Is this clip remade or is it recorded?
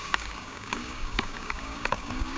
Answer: remade